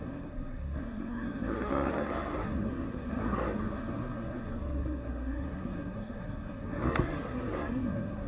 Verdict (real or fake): fake